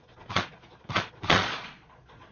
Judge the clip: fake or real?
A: fake